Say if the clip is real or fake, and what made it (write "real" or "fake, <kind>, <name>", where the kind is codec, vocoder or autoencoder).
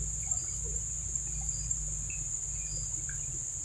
real